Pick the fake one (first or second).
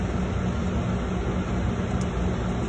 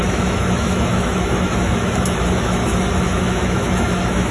second